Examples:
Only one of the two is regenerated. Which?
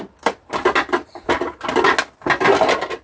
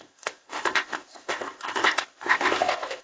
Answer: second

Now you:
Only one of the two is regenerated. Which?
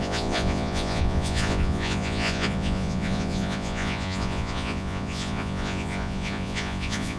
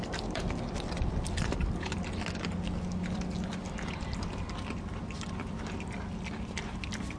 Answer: first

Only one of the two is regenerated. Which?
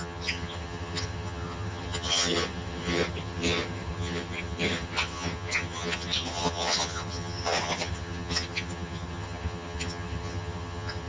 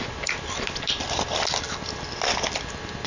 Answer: first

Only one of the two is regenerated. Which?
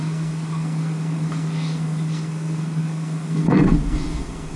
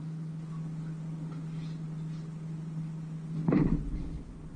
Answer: first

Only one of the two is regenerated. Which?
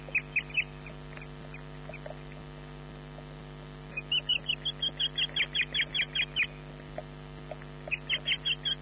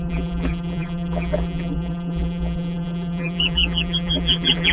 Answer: second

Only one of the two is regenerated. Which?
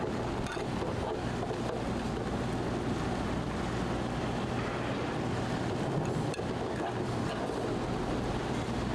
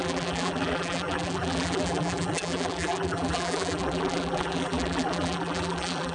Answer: second